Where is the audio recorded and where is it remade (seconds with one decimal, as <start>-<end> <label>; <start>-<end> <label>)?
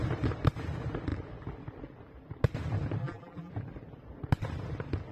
0.0-3.0 recorded; 3.0-3.5 remade; 3.5-5.1 recorded